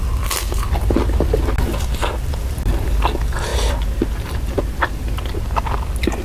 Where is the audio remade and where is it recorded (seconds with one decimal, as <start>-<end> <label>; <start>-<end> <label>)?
0.0-6.2 recorded

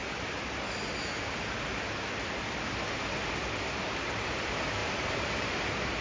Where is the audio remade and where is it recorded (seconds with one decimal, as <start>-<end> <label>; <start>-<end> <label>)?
0.0-4.8 recorded; 4.8-5.5 remade; 5.5-6.0 recorded

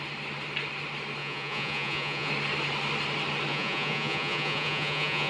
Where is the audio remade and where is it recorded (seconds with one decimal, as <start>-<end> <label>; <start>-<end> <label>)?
0.0-1.2 recorded; 1.2-2.3 remade; 2.3-3.5 recorded; 3.5-5.3 remade